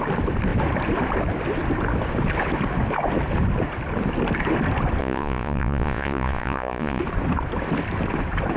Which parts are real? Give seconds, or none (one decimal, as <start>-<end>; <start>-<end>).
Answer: 0.0-5.0; 7.0-8.6